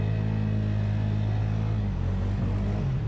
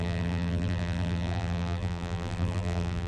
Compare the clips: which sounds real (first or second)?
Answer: first